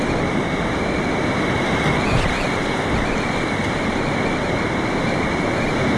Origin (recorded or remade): recorded